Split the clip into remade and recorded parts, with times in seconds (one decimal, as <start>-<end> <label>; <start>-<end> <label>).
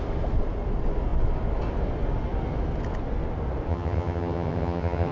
0.0-3.7 recorded; 3.7-5.1 remade